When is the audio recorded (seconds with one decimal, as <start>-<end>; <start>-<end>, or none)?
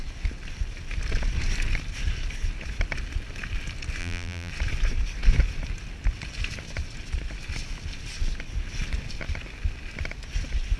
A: 0.0-4.0; 4.5-10.8